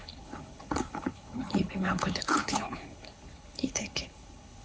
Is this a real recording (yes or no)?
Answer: no